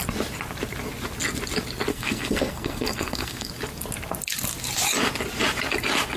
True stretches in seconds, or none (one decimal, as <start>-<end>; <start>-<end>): 0.0-1.9; 3.5-6.2